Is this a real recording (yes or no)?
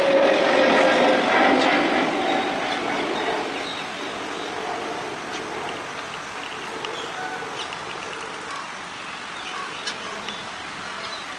yes